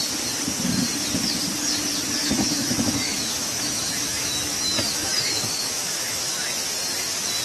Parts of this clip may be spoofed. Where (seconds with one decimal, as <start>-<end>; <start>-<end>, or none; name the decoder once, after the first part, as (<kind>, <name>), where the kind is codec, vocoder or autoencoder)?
2.2-6.5 (autoencoder, DAC-VAE)